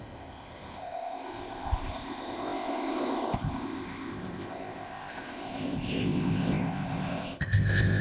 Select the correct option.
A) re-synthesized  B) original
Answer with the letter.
A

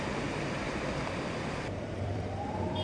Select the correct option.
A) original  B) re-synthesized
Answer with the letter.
B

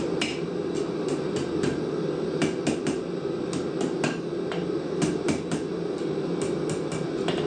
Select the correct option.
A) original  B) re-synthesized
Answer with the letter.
A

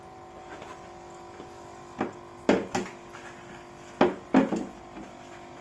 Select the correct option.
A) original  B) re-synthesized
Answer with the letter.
A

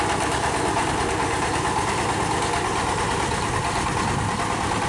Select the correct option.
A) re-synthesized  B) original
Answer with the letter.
B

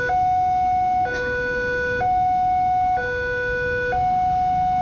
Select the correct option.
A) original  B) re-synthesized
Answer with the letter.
A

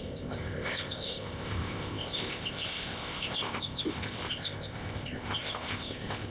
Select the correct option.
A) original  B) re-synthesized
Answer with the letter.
B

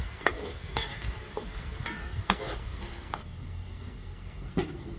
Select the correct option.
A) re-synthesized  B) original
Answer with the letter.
A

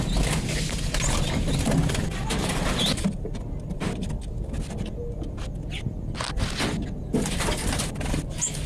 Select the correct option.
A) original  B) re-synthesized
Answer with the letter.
A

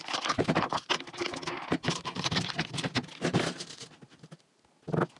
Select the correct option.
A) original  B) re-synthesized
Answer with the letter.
A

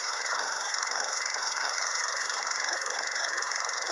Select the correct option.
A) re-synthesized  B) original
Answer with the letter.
A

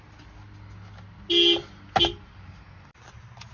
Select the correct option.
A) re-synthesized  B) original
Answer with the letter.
B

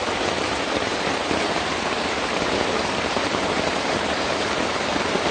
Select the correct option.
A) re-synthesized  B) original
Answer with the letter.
A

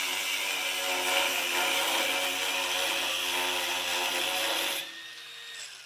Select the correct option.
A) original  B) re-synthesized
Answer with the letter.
A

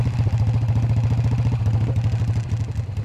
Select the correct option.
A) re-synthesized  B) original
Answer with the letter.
B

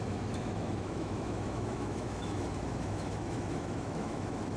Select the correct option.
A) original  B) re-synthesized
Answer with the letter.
B